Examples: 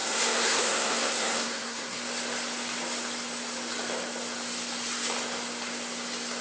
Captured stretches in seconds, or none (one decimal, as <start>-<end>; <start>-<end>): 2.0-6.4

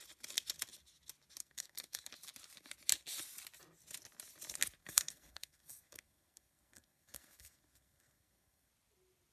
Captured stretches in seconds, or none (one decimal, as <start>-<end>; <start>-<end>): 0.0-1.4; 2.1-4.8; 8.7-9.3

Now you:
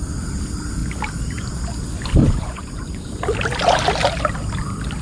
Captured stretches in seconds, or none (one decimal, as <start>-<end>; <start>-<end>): 0.0-2.2; 3.1-5.0